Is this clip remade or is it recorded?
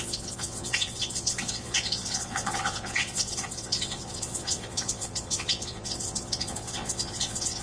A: remade